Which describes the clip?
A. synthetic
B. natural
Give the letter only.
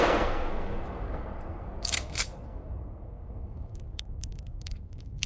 A